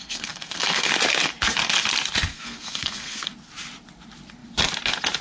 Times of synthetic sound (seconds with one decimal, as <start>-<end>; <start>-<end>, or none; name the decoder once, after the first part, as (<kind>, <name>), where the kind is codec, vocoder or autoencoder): 0.0-0.9 (codec, SNAC); 2.3-3.3